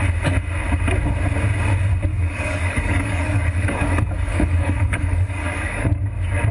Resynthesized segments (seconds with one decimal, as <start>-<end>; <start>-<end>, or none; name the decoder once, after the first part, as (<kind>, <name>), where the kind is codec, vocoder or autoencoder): 2.1-5.9 (codec, DAC)

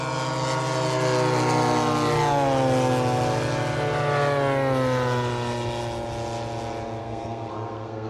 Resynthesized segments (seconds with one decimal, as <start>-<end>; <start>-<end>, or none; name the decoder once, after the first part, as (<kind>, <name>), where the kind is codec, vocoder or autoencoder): 7.0-8.1 (codec, SNAC)

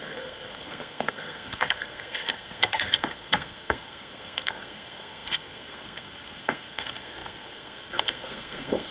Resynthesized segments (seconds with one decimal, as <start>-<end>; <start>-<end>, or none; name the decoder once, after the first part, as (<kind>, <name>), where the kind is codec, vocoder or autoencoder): 0.0-8.9 (codec, SNAC)

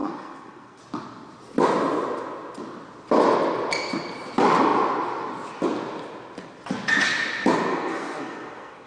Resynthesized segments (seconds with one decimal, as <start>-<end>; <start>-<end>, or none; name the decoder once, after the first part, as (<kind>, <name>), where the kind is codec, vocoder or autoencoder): 0.0-0.8 (codec, SNAC); 7.7-8.9

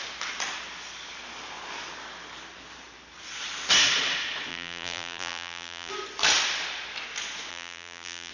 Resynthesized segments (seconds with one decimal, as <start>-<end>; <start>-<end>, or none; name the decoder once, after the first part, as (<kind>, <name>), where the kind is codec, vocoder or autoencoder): 4.5-5.9 (vocoder, BigVGAN v2); 7.5-8.3

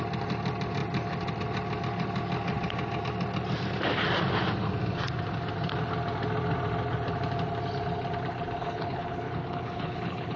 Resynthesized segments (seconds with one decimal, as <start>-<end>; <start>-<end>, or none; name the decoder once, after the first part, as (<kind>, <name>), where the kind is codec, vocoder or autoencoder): 8.6-10.4 (codec, HILCodec)